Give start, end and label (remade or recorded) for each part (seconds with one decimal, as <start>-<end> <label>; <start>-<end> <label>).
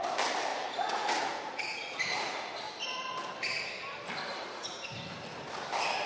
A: 0.0-0.5 recorded; 0.5-2.5 remade; 2.5-4.3 recorded; 4.3-4.9 remade; 4.9-6.1 recorded